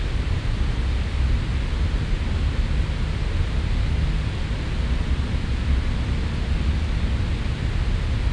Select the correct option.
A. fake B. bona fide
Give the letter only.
B